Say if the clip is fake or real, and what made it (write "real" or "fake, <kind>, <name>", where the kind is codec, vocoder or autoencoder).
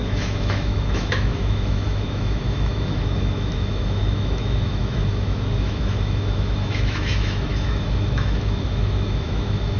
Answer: fake, autoencoder, DAC-VAE